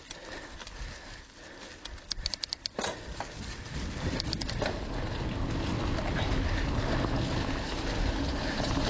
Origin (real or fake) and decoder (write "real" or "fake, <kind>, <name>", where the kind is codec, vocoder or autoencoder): real